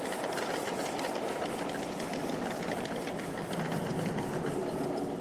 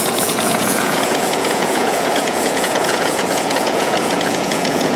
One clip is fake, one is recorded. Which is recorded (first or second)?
first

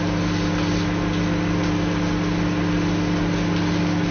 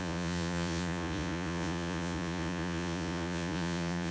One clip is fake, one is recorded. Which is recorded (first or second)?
first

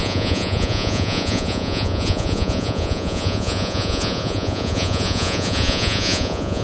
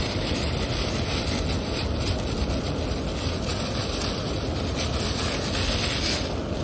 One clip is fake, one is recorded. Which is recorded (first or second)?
second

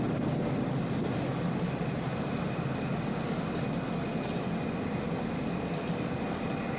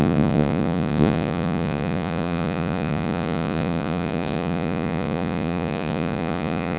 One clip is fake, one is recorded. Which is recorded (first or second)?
first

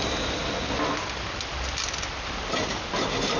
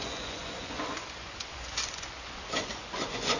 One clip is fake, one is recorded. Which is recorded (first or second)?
first